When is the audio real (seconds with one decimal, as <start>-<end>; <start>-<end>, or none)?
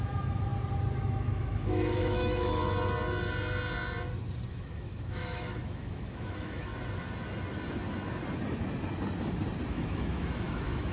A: 0.5-1.0; 2.6-4.5; 6.7-9.7